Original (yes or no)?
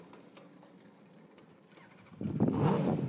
yes